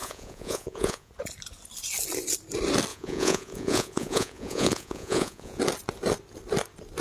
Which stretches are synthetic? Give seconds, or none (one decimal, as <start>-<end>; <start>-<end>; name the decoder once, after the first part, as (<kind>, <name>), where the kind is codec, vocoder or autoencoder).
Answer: 0.0-1.1 (vocoder, Vocos); 2.9-5.6